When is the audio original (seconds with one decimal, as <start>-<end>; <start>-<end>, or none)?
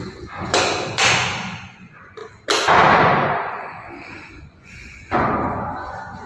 2.2-3.0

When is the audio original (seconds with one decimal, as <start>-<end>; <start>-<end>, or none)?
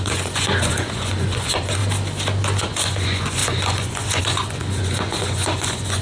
1.8-2.6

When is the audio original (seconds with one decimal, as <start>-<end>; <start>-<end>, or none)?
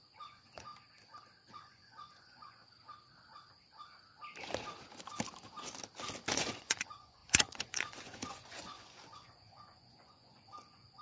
0.7-1.5; 2.6-6.3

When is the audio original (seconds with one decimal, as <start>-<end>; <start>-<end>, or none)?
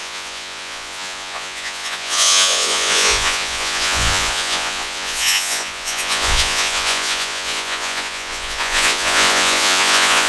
none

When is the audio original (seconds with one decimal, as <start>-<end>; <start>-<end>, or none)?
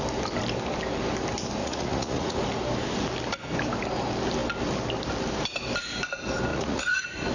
0.0-1.6; 2.4-6.5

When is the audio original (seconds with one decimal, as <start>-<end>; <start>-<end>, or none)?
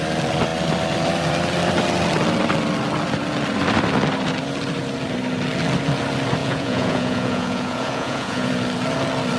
0.0-6.4; 8.5-9.4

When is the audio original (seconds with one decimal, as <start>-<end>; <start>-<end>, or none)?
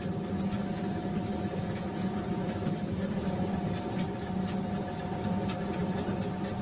0.0-1.6; 2.3-6.6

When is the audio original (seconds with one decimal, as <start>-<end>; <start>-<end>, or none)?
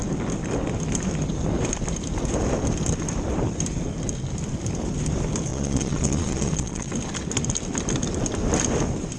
0.0-5.5; 6.9-9.2